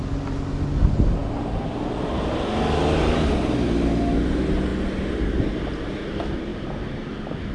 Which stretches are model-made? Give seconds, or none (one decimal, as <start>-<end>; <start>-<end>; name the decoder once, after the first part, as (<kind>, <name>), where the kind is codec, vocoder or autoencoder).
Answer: 6.5-7.1 (vocoder, BigVGAN v2)